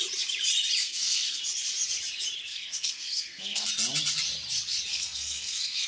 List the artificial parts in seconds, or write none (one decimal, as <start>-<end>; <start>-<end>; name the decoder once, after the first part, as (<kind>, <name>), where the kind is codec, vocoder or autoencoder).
0.8-1.4 (codec, SNAC); 2.5-3.7; 4.9-5.9